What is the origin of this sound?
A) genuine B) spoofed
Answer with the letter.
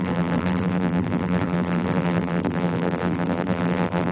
B